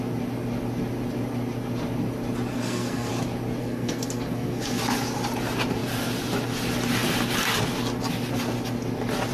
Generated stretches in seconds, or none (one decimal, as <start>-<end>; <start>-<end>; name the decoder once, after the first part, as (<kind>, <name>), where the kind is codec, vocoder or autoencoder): 2.5-3.1 (codec, SNAC); 3.6-4.8

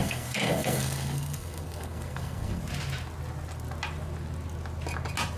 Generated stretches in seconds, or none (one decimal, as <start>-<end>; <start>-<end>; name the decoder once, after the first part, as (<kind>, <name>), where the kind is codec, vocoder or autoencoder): 0.0-2.6 (codec, SNAC)

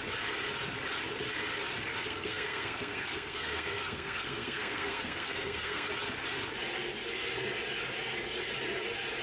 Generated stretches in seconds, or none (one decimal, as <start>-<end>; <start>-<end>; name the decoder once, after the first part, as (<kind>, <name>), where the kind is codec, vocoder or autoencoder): 1.9-5.9 (codec, SNAC)

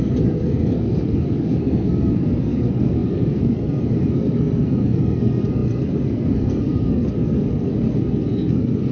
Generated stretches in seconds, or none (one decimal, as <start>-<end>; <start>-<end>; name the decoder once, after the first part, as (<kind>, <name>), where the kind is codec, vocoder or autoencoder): 0.0-8.9 (codec, SNAC)